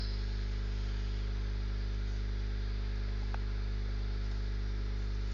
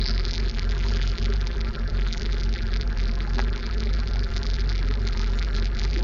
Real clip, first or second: first